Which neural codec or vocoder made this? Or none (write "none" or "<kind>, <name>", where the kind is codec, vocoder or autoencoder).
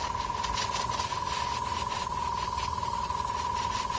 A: none